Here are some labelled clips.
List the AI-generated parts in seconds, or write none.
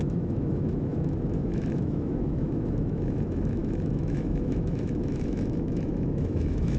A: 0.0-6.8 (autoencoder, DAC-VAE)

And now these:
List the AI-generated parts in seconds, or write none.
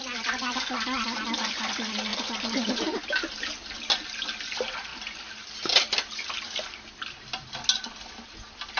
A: none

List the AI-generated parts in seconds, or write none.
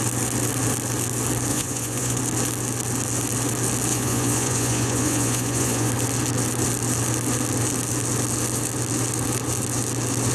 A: 1.5-2.2 (vocoder, Vocos); 3.9-5.9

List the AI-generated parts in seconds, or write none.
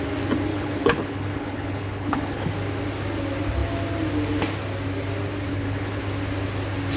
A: 0.5-2.5 (codec, HILCodec); 5.5-6.0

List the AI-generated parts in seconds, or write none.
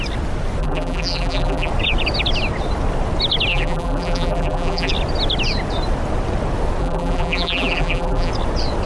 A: 0.6-1.7 (vocoder, BigVGAN v2); 3.5-4.9; 6.8-8.3